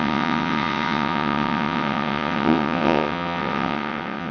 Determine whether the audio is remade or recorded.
remade